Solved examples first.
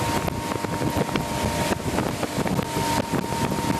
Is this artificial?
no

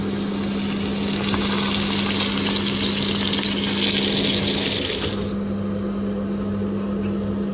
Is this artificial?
no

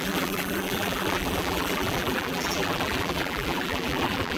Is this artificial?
yes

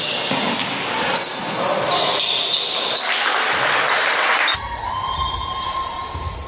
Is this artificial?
no